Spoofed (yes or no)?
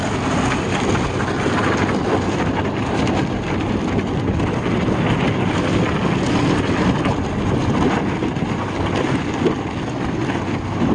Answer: no